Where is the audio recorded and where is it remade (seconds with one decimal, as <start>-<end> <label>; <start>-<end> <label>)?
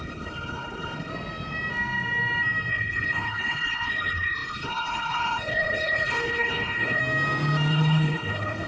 0.0-1.1 remade; 1.1-2.7 recorded; 2.7-7.0 remade; 7.0-7.7 recorded; 7.7-8.7 remade